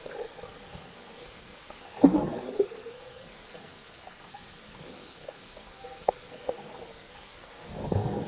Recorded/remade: remade